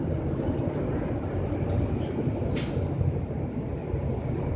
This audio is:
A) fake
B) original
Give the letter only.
B